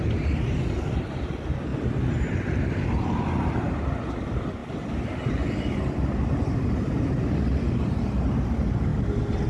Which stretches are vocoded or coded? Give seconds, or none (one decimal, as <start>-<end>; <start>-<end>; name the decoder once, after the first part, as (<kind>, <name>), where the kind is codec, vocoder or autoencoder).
none